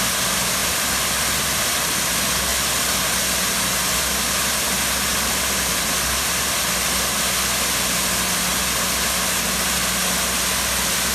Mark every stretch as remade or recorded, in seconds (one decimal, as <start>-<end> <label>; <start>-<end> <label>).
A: 0.0-0.6 recorded; 0.6-1.3 remade; 1.3-11.1 recorded